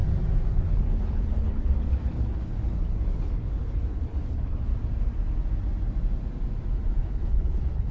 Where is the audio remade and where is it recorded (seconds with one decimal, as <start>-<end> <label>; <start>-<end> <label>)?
0.0-0.5 recorded; 0.5-4.7 remade; 4.7-7.0 recorded; 7.0-7.9 remade